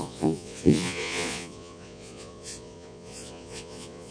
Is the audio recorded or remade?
remade